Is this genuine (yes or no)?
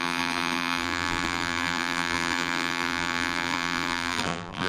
no